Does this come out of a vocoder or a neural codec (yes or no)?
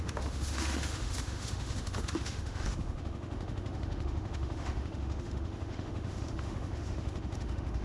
yes